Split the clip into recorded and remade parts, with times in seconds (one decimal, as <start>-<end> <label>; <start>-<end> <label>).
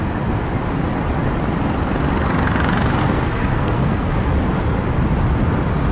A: 0.0-3.0 recorded; 3.0-4.3 remade; 4.3-5.9 recorded